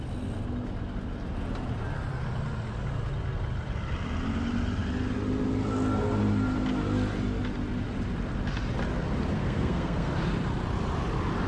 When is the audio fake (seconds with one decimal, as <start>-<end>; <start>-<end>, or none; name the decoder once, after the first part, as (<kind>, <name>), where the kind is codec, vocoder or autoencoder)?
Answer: 9.3-10.1 (codec, SNAC)